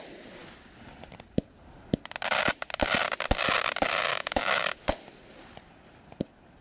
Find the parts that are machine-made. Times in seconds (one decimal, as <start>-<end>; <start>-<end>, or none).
4.1-4.7